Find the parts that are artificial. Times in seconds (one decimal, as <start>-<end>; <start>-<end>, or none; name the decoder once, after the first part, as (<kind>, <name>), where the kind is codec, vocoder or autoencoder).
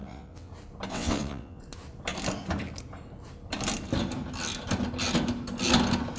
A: 0.0-0.5 (vocoder, WaveNeXt); 0.9-1.6